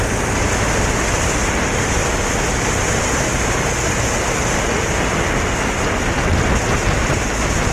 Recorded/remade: recorded